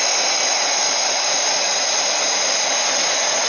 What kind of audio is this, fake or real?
real